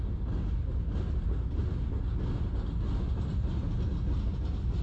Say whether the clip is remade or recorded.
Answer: recorded